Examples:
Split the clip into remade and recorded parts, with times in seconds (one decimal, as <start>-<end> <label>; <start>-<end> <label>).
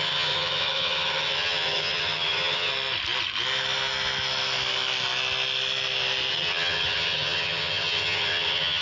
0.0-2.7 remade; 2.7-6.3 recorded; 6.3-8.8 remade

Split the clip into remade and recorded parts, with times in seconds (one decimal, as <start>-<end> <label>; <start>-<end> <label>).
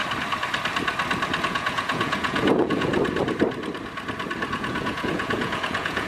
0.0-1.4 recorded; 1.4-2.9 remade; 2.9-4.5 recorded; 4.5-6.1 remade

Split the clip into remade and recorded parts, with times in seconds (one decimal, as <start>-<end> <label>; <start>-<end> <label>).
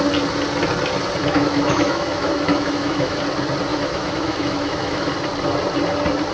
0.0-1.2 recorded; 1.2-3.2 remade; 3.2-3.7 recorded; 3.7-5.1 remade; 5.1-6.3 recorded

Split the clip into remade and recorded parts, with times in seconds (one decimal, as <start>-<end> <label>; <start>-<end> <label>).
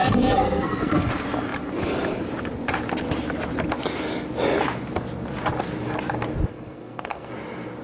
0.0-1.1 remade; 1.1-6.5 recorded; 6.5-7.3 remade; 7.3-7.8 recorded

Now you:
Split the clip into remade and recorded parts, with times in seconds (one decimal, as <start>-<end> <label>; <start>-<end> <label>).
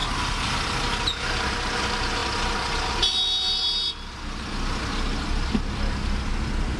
0.0-6.8 recorded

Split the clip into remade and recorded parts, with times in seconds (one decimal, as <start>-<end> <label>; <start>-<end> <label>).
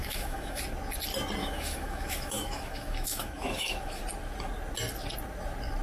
0.0-0.6 remade; 0.6-1.4 recorded; 1.4-4.0 remade; 4.0-5.8 recorded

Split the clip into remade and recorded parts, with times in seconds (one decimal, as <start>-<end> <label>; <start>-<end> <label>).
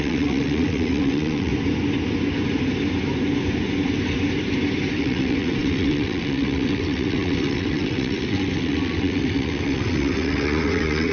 0.0-1.5 remade; 1.5-5.0 recorded; 5.0-11.1 remade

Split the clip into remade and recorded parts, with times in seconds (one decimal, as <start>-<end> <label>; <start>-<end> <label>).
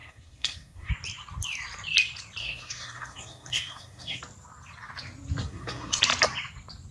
0.0-0.9 remade; 0.9-2.4 recorded; 2.4-4.2 remade; 4.2-5.4 recorded; 5.4-6.0 remade; 6.0-6.9 recorded